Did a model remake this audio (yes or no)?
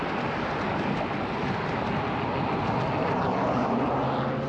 no